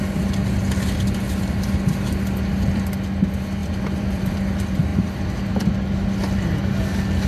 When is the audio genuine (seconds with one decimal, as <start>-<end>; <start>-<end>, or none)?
0.0-3.6; 4.4-7.3